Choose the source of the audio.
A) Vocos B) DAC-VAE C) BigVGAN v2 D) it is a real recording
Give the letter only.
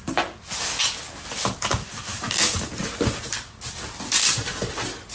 D